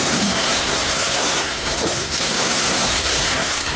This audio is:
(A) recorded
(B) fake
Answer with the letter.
B